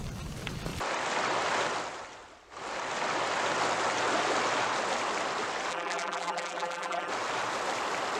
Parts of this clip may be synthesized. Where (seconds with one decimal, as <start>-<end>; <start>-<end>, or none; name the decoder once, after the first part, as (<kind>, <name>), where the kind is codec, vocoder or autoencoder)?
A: 5.7-7.1 (vocoder, BigVGAN v2)